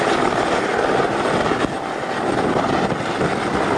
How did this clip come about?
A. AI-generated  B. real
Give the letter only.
B